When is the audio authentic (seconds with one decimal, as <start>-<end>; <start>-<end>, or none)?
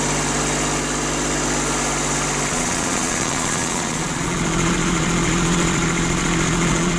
0.0-2.5